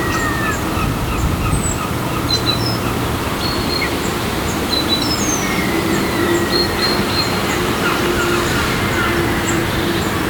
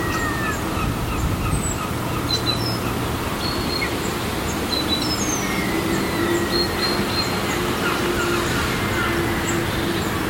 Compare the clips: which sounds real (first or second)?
second